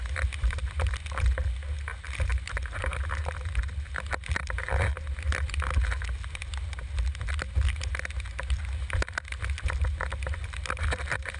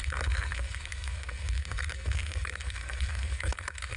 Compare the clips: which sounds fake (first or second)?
second